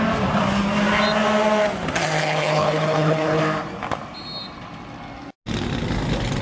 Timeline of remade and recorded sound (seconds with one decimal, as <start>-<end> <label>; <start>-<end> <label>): 0.0-2.2 recorded; 2.2-3.4 remade; 3.4-6.4 recorded